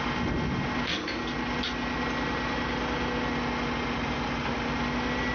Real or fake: real